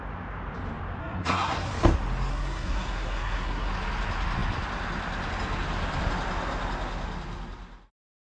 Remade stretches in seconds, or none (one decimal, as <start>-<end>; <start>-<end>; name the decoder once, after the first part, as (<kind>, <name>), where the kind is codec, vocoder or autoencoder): 1.0-1.7 (codec, SNAC); 2.3-3.7